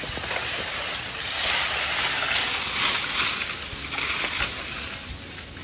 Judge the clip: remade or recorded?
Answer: recorded